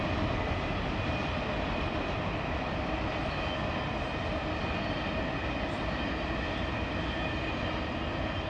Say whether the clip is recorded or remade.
recorded